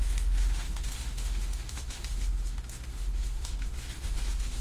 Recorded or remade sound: remade